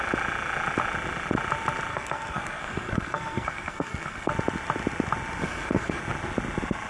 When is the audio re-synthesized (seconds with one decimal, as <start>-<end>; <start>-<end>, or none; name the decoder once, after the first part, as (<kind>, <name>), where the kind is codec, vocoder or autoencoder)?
1.9-4.3 (codec, SNAC); 5.4-6.0

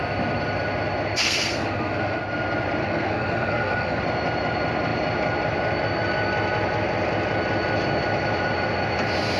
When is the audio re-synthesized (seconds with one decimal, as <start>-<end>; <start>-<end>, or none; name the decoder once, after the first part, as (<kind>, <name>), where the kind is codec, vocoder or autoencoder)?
1.2-2.2 (codec, SNAC); 2.8-4.0